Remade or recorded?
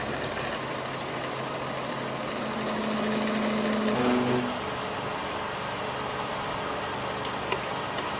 recorded